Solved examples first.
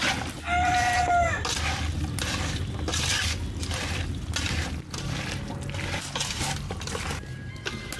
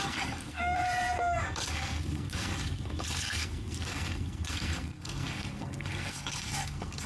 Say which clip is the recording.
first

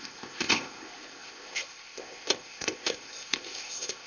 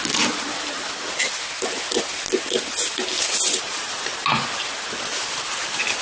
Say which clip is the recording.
second